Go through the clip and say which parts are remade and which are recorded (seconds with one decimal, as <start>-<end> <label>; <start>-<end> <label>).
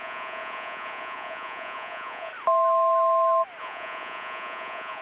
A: 0.0-2.3 remade; 2.3-3.6 recorded; 3.6-5.0 remade